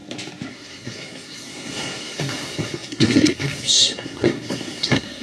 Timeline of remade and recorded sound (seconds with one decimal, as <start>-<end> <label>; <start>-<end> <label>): 0.0-0.5 recorded; 0.5-5.2 remade